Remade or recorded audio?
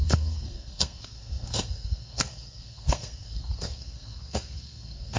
remade